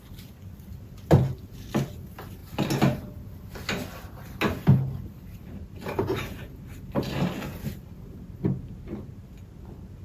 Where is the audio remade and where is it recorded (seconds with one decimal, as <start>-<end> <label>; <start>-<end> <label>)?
0.0-10.0 recorded